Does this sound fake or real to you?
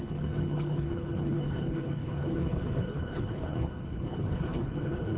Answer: fake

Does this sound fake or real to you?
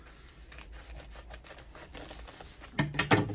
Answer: real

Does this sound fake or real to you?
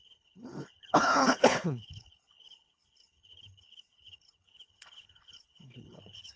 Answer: fake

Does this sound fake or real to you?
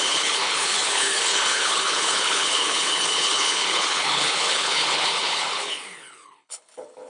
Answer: fake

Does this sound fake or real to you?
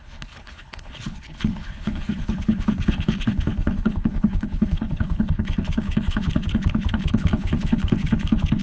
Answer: fake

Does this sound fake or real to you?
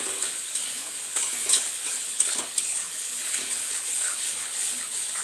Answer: fake